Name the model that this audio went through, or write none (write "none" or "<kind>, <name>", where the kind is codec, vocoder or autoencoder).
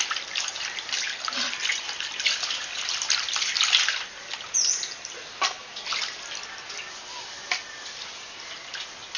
none